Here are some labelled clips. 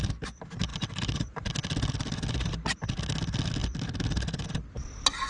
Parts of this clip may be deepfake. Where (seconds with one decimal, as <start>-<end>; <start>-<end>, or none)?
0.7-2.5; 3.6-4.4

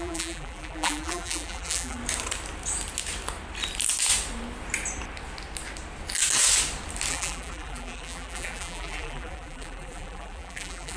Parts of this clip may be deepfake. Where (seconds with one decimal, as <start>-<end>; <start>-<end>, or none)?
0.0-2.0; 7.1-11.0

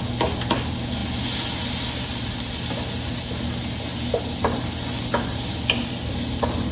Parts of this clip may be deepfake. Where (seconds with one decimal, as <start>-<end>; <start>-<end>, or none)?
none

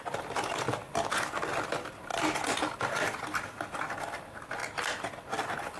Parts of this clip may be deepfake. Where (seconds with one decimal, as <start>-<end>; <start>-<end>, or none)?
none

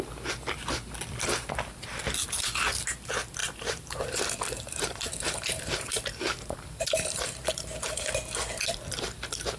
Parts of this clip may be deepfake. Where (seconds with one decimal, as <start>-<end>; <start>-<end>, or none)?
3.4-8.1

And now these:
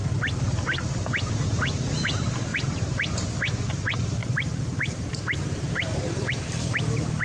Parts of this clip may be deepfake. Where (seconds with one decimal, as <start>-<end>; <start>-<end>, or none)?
2.5-3.1; 4.2-6.8